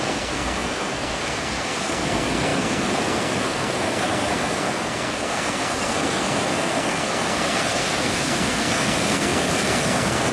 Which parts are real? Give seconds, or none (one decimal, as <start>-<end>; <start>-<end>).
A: none